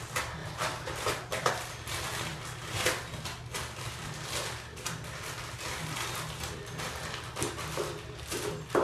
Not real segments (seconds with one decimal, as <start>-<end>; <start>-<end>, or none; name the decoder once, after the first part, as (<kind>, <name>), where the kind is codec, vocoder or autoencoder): 0.4-1.5 (vocoder, BigVGAN v2); 2.3-2.9